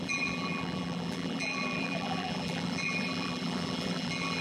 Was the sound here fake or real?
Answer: fake